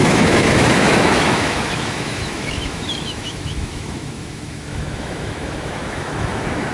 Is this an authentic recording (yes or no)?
no